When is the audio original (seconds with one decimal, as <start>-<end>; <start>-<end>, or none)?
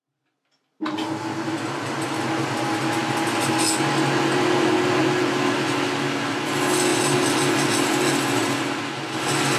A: 0.0-9.6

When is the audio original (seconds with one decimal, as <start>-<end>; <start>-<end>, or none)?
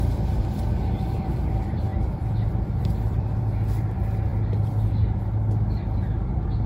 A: none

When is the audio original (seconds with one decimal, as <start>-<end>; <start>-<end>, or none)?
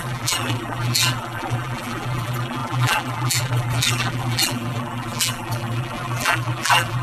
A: none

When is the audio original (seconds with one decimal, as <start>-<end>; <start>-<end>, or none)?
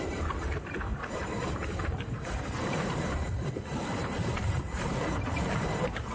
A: none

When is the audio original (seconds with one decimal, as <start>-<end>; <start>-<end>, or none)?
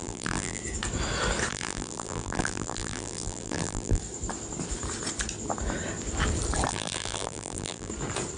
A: 0.6-1.5; 4.0-6.7; 7.9-8.4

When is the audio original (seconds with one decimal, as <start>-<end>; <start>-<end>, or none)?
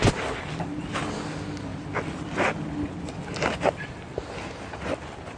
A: 0.0-5.4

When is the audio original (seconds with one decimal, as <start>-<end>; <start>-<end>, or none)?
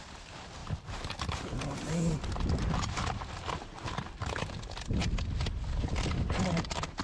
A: 0.0-0.6; 4.6-7.0